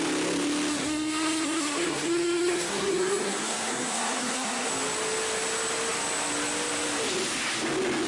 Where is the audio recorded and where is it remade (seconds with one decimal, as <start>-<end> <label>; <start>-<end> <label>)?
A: 0.0-0.7 recorded; 0.7-4.7 remade; 4.7-8.1 recorded